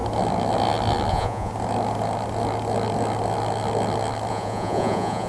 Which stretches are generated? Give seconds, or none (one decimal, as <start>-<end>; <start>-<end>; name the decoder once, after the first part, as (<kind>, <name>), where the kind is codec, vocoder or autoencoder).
1.1-1.5 (vocoder, Vocos); 4.3-5.3